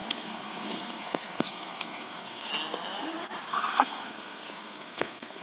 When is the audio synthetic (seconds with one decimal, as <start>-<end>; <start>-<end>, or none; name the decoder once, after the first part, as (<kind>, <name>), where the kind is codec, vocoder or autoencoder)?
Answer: 0.0-2.5 (codec, SNAC); 3.5-5.4